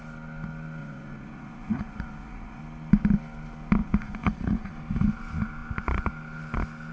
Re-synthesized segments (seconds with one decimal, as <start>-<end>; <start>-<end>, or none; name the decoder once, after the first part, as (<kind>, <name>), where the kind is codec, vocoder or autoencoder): 0.8-2.6 (vocoder, Vocos); 3.8-4.7